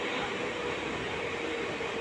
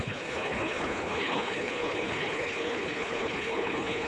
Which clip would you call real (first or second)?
first